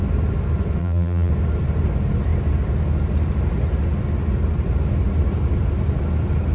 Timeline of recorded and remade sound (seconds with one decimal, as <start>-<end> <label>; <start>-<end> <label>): 0.0-0.8 recorded; 0.8-1.3 remade; 1.3-6.5 recorded